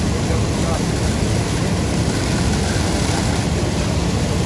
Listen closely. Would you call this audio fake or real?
real